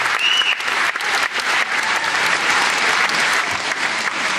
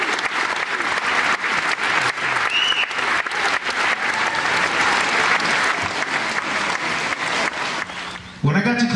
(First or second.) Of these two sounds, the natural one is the second